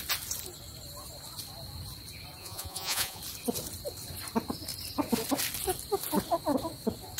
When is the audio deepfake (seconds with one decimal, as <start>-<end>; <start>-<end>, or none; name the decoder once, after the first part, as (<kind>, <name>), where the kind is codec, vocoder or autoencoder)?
2.4-3.2 (vocoder, Vocos)